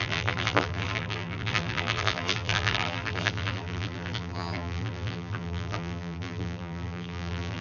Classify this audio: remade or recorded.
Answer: remade